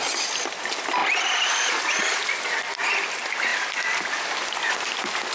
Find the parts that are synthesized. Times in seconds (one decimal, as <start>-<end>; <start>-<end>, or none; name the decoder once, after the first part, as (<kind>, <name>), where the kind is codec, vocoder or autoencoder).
none